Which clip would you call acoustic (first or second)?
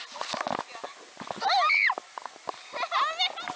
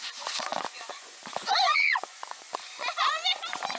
first